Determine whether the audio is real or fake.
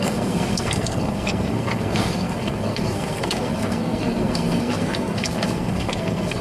fake